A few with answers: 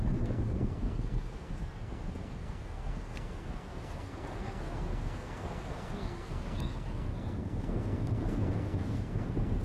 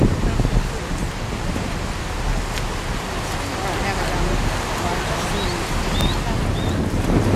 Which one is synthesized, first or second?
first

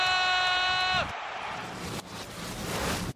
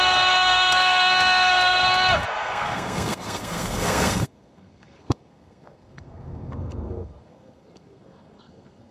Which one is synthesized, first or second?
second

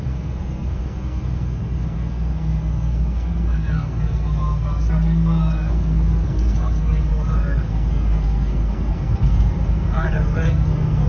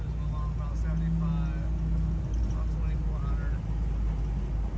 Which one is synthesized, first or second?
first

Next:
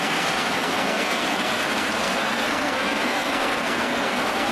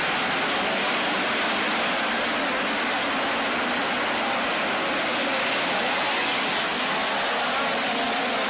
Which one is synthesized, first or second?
first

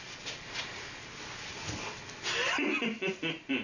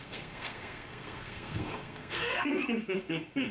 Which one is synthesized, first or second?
second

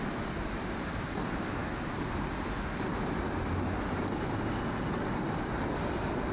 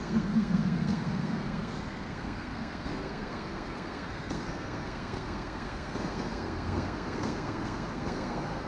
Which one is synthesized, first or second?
second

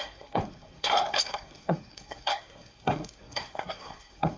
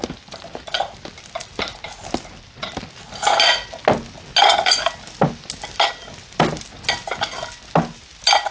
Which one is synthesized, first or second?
first